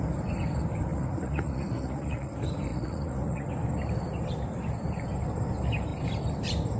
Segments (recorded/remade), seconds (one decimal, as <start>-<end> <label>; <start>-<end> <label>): 0.0-0.9 recorded; 0.9-2.3 remade; 2.3-2.7 recorded; 2.7-3.5 remade; 3.5-6.8 recorded